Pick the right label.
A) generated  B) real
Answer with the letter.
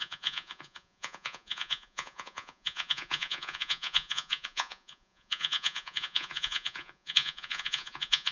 A